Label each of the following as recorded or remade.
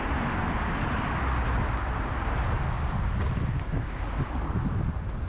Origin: recorded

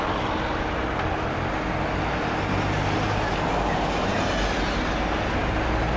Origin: recorded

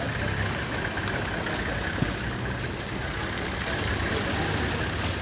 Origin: recorded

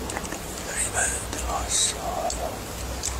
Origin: recorded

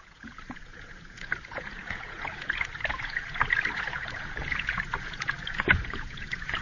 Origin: remade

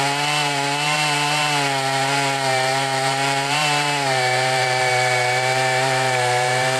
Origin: remade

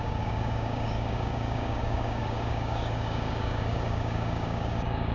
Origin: remade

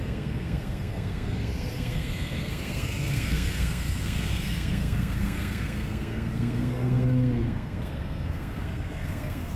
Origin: remade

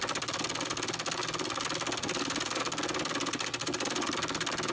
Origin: recorded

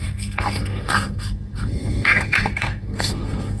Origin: remade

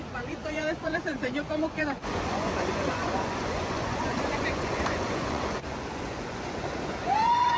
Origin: remade